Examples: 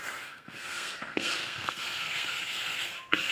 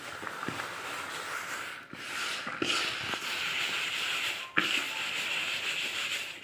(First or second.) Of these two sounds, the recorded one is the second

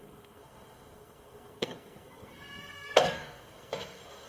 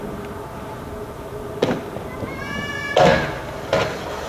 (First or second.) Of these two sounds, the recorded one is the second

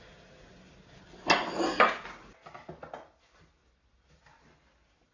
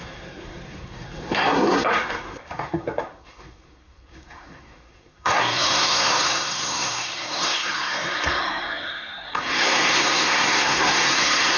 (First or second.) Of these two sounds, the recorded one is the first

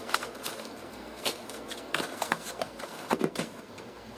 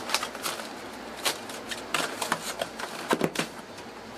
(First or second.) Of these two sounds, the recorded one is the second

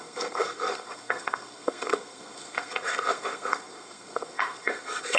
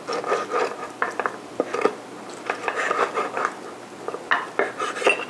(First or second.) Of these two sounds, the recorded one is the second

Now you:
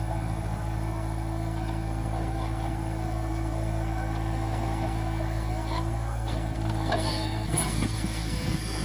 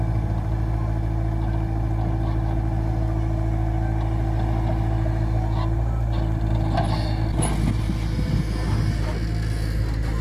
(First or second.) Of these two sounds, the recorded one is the second